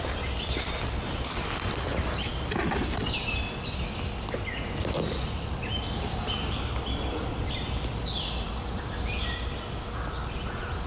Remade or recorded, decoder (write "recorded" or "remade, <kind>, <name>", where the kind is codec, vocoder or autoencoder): recorded